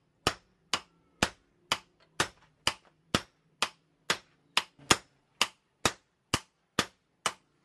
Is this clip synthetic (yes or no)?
no